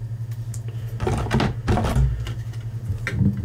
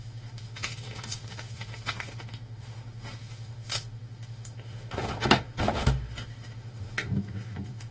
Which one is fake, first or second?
second